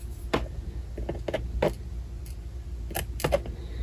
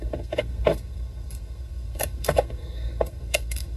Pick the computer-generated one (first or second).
second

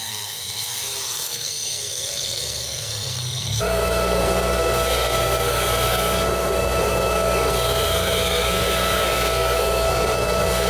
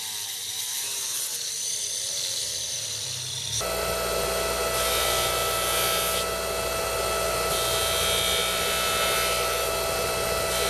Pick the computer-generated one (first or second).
first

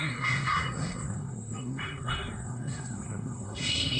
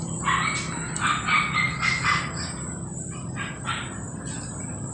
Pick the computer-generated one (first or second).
first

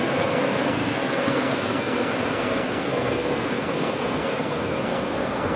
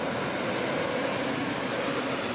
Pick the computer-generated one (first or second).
first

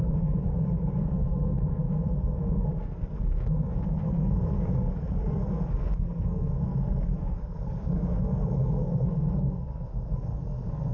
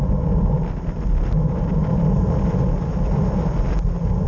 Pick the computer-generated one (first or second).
first